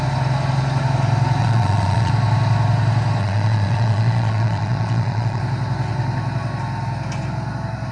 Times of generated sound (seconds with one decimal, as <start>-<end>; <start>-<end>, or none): 1.4-2.1; 3.2-5.4